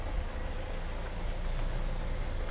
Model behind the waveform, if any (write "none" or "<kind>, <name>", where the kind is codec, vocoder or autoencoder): none